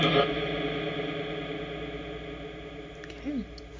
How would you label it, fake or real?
real